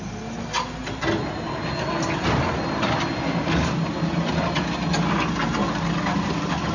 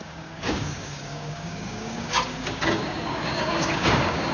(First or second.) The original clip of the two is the first